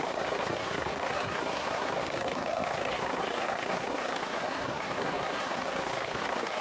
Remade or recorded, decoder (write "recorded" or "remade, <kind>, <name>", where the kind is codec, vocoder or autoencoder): remade, codec, SNAC